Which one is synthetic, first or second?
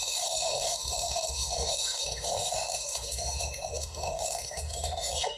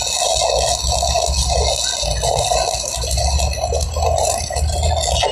first